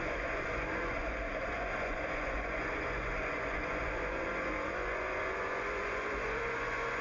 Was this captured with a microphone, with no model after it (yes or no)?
no